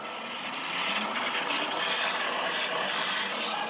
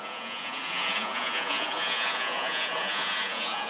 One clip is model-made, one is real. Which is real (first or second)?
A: first